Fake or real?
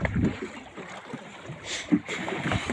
fake